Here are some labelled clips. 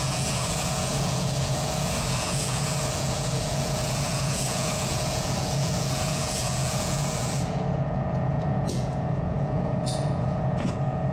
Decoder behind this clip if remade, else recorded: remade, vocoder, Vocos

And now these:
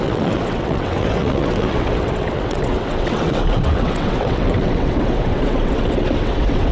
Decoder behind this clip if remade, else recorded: remade, vocoder, WaveNeXt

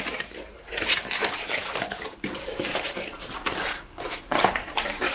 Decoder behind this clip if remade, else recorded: remade, vocoder, BigVGAN v2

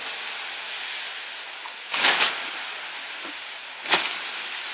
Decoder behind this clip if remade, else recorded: recorded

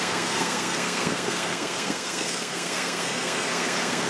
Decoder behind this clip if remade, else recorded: remade, codec, SNAC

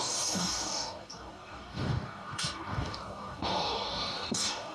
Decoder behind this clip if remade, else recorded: remade, codec, DAC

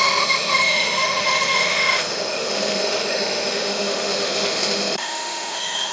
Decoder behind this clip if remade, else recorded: remade, autoencoder, DAC-VAE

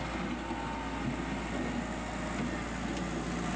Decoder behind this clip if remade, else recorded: recorded